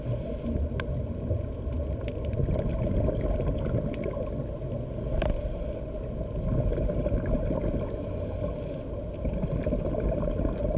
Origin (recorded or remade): recorded